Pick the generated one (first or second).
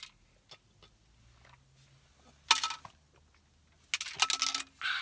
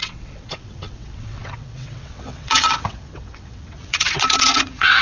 second